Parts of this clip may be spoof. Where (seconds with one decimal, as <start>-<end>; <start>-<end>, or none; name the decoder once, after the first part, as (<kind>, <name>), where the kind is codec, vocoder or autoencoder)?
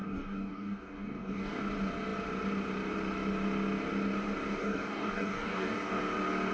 0.0-1.6 (codec, DAC); 4.6-6.0